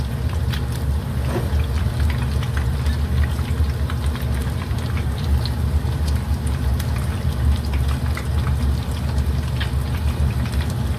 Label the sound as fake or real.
real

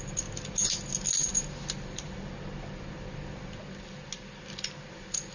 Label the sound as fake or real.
real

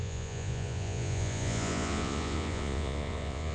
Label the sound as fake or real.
fake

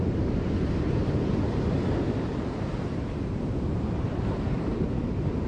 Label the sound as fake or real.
fake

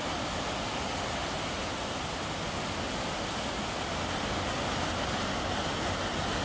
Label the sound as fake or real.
real